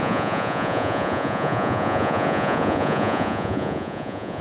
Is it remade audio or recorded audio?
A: remade